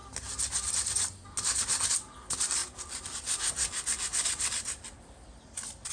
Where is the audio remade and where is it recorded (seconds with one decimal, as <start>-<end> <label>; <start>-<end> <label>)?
0.0-5.9 recorded